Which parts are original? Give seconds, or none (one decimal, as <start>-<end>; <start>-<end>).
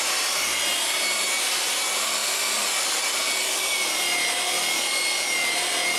0.0-6.0